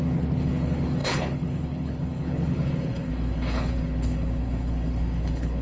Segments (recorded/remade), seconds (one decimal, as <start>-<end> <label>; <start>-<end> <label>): 0.0-5.6 remade